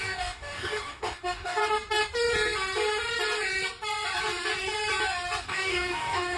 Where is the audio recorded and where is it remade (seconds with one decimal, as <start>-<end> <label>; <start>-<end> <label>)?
0.0-1.6 remade; 1.6-5.4 recorded; 5.4-6.4 remade

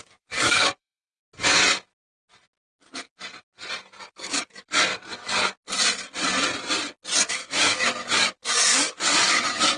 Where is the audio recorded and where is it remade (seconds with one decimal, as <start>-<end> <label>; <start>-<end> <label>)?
0.0-1.2 remade; 1.2-4.0 recorded; 4.0-4.9 remade; 4.9-7.3 recorded; 7.3-9.8 remade

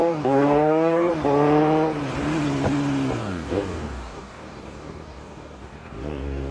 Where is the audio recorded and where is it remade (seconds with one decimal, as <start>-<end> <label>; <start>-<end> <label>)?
0.0-1.1 remade; 1.1-3.2 recorded; 3.2-6.5 remade

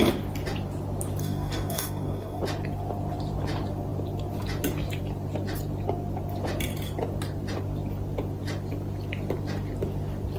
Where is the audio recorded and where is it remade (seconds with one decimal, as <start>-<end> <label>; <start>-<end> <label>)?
0.0-1.2 recorded; 1.2-2.4 remade; 2.4-10.4 recorded